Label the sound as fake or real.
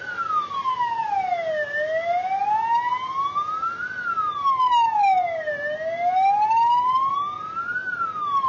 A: real